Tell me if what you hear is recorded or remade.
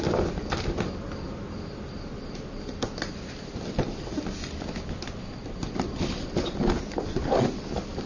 recorded